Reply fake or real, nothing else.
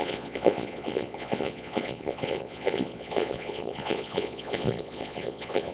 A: fake